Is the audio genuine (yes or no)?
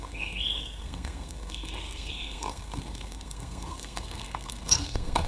no